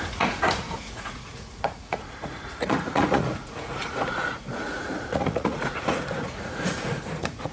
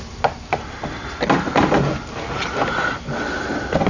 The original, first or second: second